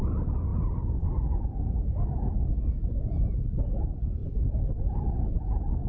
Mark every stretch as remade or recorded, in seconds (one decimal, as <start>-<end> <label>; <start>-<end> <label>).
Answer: 0.0-5.9 recorded